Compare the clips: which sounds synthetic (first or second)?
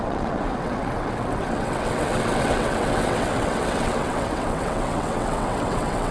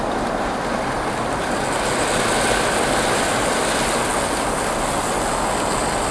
first